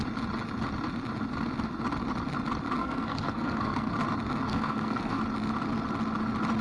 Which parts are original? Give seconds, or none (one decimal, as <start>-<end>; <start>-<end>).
0.0-2.8; 3.9-4.5; 5.2-6.6